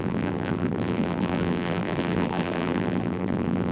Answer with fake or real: fake